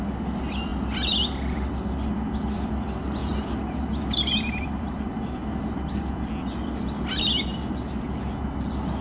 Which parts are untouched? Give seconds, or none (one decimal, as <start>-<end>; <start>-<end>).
0.0-3.2; 6.3-7.5; 8.0-9.0